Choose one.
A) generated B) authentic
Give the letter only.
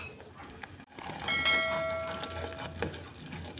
B